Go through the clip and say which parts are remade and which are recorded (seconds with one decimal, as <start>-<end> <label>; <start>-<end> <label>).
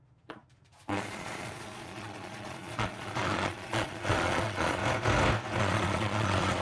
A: 0.0-4.8 remade; 4.8-5.6 recorded; 5.6-6.6 remade